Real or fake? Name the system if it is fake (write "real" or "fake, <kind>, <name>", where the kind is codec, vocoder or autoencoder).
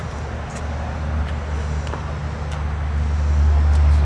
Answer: real